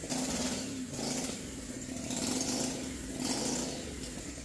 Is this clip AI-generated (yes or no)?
no